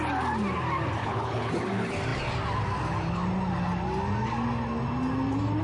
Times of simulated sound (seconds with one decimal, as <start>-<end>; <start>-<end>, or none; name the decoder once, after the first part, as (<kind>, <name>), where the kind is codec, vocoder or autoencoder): 1.0-1.5 (codec, HILCodec)